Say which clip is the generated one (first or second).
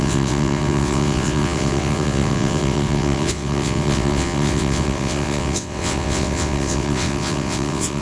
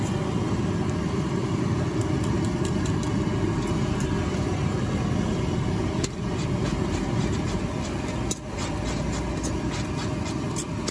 first